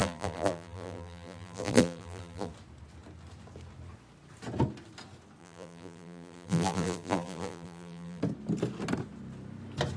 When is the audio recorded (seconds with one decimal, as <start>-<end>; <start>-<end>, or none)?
2.5-5.4; 8.2-10.0